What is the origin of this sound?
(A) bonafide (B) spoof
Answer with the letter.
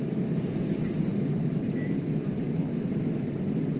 A